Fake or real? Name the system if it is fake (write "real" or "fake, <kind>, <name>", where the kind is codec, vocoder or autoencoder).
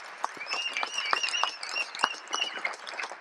real